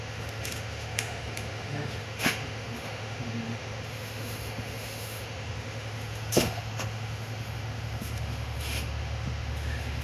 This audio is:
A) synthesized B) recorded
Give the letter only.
A